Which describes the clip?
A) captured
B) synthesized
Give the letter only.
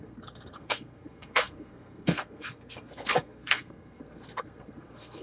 B